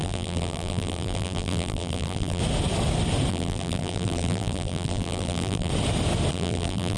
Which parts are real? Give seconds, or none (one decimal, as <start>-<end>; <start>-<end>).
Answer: 2.4-3.3; 5.7-6.3